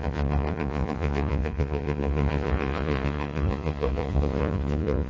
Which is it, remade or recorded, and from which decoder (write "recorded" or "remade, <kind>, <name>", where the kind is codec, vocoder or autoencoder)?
remade, vocoder, Vocos